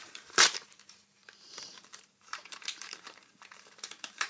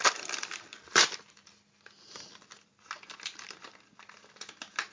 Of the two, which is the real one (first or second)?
second